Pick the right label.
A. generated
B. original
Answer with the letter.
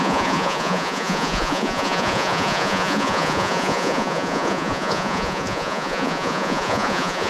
A